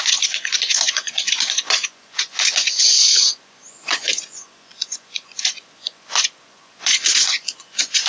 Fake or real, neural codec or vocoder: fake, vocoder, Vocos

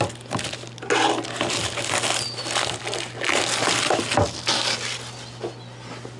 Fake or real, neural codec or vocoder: real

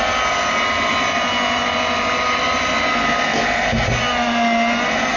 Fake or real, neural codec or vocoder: real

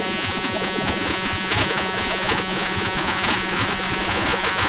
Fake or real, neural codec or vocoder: fake, vocoder, Vocos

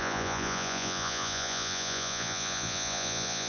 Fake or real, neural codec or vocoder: fake, vocoder, Vocos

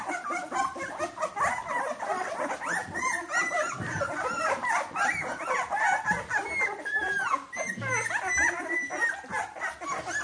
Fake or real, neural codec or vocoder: real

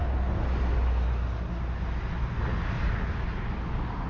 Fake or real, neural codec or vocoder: real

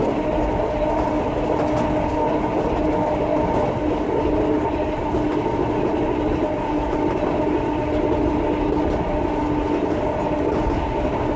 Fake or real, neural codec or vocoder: real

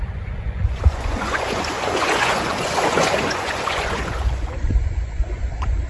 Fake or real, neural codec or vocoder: fake, vocoder, Vocos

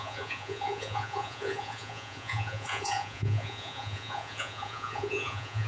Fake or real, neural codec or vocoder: fake, vocoder, Vocos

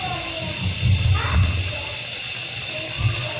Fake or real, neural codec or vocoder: real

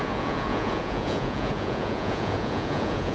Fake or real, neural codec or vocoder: fake, vocoder, Vocos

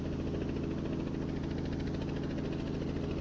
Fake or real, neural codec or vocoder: real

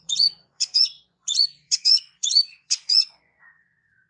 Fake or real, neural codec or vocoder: fake, vocoder, Vocos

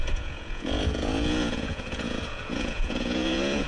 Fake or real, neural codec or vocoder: fake, vocoder, Vocos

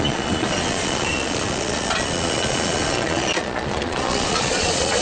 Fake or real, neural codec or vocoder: fake, vocoder, Vocos